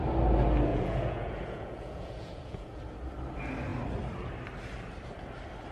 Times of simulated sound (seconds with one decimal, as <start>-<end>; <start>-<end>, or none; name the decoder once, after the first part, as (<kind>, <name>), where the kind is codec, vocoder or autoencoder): 0.7-2.8 (vocoder, Vocos)